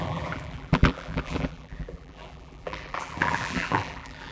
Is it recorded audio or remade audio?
remade